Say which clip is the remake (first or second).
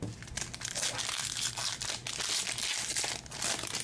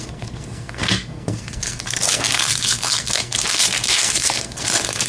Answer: second